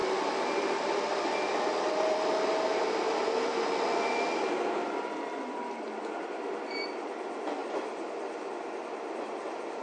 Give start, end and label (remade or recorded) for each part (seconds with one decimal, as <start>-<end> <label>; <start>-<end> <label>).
0.0-7.6 remade; 7.6-9.1 recorded; 9.1-9.8 remade